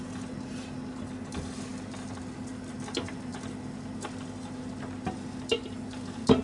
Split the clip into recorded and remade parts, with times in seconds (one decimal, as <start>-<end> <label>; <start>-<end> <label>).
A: 0.0-3.3 recorded; 3.3-5.6 remade; 5.6-6.4 recorded